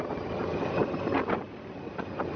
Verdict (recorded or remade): recorded